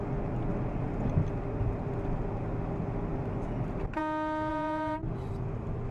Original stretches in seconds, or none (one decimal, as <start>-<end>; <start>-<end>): 0.0-4.5; 5.0-5.9